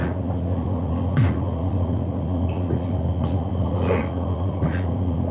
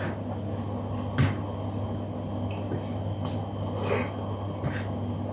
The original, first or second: second